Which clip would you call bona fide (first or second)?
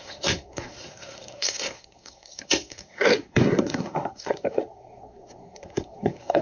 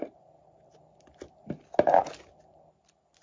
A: second